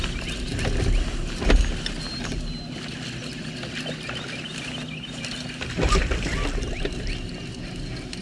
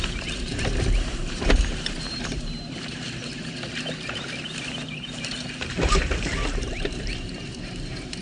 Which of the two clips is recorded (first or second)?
first